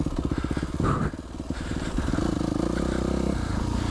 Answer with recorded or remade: recorded